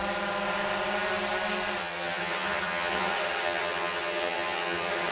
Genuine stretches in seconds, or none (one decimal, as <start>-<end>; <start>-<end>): 0.0-1.8